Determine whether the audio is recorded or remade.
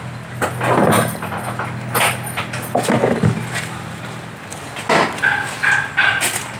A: recorded